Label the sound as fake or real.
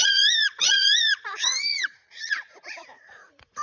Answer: fake